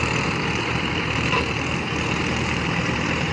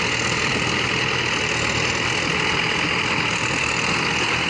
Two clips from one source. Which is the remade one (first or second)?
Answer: first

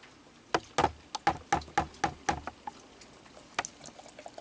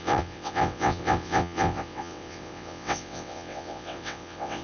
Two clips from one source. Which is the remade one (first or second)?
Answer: second